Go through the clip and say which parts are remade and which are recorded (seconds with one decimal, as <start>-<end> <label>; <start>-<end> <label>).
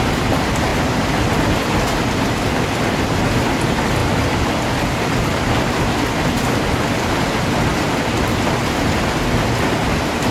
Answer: 0.0-10.3 recorded